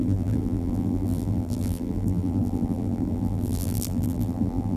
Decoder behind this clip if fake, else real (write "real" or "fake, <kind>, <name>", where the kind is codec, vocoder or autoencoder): fake, vocoder, BigVGAN v2